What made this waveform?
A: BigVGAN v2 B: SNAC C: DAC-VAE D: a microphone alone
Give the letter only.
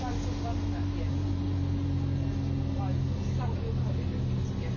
D